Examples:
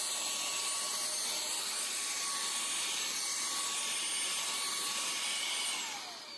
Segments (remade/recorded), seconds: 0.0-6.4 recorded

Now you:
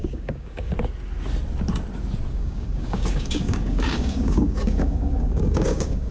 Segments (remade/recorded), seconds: 0.0-0.7 remade; 0.7-2.3 recorded; 2.3-6.1 remade

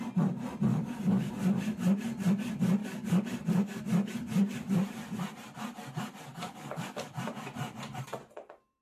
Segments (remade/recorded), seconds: 0.0-0.7 recorded; 0.7-1.3 remade; 1.3-2.8 recorded; 2.8-3.8 remade; 3.8-6.3 recorded; 6.3-7.1 remade; 7.1-8.8 recorded

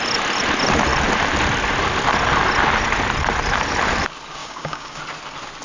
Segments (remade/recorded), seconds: 0.0-4.4 recorded; 4.4-5.0 remade; 5.0-5.6 recorded

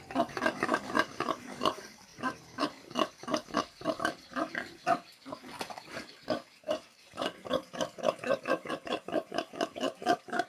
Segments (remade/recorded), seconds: 0.0-10.5 remade